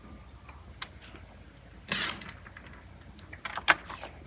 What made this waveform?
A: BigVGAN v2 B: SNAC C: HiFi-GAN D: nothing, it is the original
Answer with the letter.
D